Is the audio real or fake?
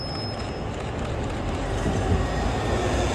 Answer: real